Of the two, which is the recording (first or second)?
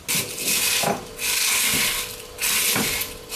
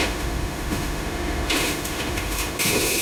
first